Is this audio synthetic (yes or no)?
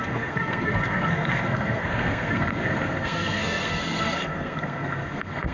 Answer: yes